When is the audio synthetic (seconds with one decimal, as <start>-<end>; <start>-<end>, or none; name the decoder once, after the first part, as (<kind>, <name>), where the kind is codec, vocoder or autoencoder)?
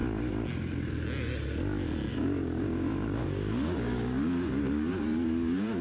2.1-4.9 (codec, DAC)